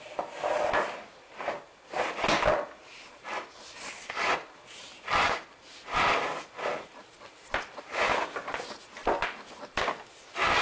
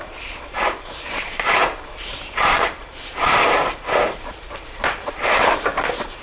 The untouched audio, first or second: first